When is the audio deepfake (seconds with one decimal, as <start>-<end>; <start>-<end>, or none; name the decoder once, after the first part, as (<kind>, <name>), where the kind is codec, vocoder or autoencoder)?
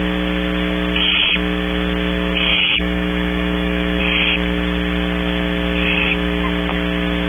2.5-4.0 (autoencoder, DAC-VAE)